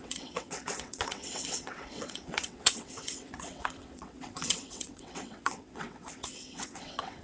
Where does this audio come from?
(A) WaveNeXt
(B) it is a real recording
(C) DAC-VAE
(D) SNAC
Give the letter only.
A